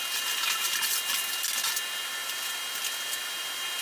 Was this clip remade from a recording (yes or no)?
no